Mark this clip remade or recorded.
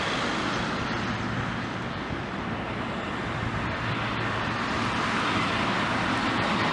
recorded